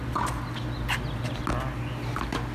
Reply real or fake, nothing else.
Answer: real